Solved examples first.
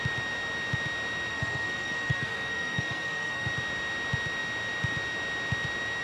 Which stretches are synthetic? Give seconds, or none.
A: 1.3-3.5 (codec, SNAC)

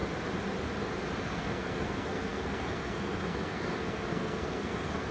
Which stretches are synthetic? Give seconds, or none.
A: 1.2-5.1 (codec, SNAC)

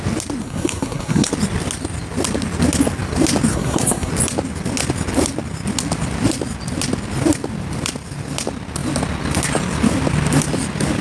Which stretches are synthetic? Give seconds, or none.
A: 0.4-1.3 (codec, SNAC); 3.5-4.1

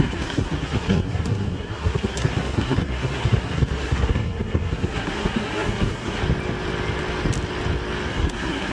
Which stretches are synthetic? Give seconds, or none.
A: 0.0-6.2 (codec, SNAC); 8.1-8.7

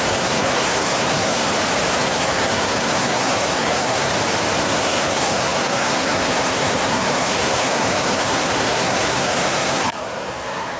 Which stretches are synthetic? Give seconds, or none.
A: 0.0-1.5 (codec, SNAC); 2.0-4.1; 4.6-10.8

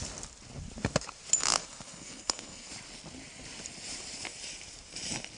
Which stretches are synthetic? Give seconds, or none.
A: 1.6-2.7 (codec, SNAC)

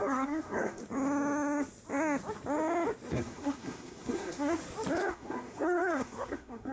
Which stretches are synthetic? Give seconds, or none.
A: 0.0-0.8 (codec, SNAC); 3.1-4.6; 5.1-6.7